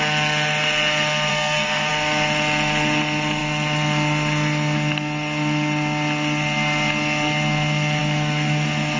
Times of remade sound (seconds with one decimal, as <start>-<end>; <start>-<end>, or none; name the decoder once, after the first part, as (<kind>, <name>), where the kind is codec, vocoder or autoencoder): 1.3-1.9 (codec, SNAC)